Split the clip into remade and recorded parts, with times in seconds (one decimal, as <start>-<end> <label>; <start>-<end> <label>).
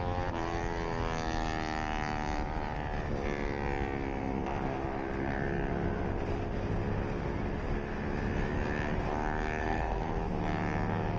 0.0-9.6 recorded; 9.6-10.2 remade; 10.2-11.2 recorded